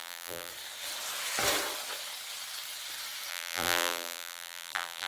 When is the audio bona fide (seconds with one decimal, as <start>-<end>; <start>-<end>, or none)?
0.5-3.3